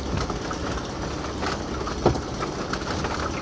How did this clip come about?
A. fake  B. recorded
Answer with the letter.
B